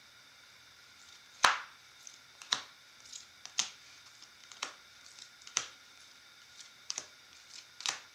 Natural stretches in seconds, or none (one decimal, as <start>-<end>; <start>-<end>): 0.0-4.4; 7.2-8.1